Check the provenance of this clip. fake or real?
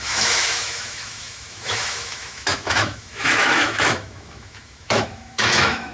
fake